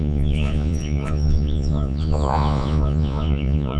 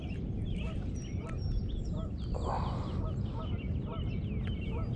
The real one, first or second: second